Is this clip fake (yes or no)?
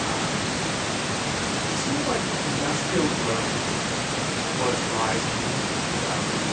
no